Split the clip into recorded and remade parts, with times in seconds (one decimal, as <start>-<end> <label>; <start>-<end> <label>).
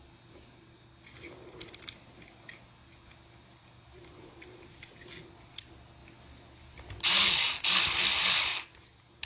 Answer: 0.0-9.3 recorded